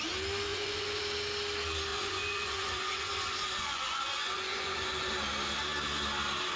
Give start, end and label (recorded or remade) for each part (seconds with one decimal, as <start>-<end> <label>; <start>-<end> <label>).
0.0-0.5 recorded; 0.5-1.0 remade; 1.0-1.9 recorded; 1.9-5.1 remade; 5.1-6.6 recorded